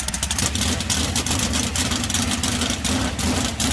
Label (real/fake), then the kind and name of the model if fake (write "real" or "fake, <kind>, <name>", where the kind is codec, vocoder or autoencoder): real